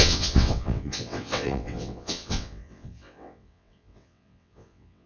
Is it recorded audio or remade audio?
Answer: remade